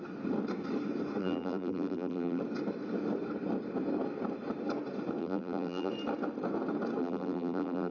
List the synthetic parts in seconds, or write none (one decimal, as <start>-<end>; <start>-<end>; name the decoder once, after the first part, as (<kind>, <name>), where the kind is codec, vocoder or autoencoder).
1.2-2.4 (vocoder, BigVGAN v2); 5.2-5.9; 7.0-7.9